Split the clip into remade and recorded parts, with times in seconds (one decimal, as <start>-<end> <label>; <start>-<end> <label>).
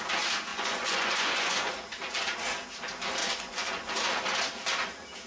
0.0-0.5 recorded; 0.5-1.7 remade; 1.7-3.2 recorded; 3.2-3.9 remade; 3.9-5.3 recorded